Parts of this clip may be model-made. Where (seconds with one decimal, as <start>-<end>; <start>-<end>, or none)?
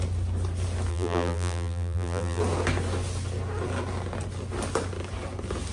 0.9-2.4